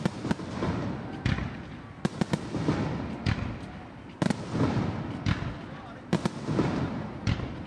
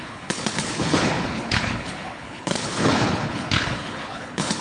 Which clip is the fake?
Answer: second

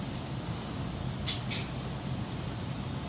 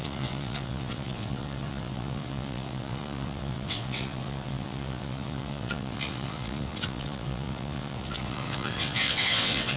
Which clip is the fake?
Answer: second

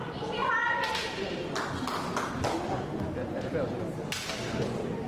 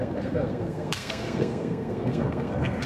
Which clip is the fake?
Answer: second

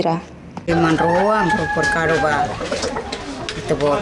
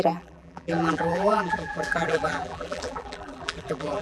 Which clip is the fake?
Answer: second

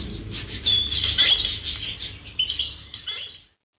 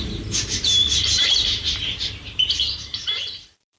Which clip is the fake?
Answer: second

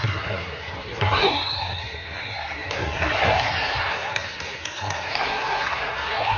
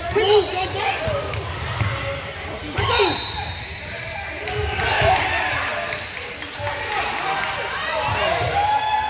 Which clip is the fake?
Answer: first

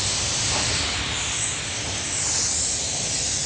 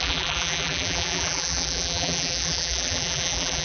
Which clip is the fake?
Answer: second